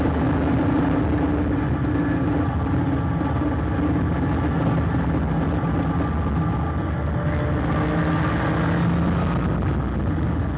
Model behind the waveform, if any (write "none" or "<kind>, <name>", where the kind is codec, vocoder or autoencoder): none